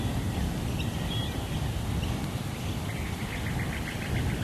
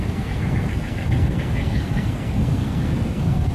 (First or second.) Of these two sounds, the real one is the first